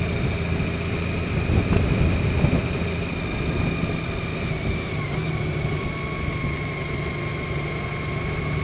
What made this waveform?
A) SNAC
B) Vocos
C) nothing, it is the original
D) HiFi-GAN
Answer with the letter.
C